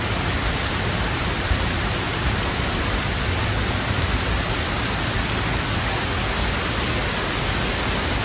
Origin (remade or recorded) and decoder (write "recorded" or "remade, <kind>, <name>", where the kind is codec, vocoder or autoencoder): recorded